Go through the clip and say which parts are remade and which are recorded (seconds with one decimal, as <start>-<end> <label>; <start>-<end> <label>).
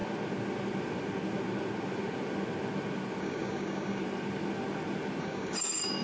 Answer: 0.0-3.2 recorded; 3.2-4.0 remade; 4.0-5.2 recorded; 5.2-6.0 remade